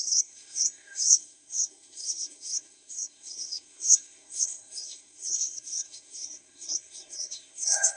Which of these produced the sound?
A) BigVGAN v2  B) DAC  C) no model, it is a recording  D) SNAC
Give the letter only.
D